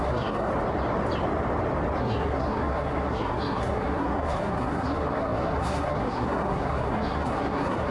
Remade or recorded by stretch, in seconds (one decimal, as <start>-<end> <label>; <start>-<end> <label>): 0.0-0.5 remade; 0.5-2.0 recorded; 2.0-7.9 remade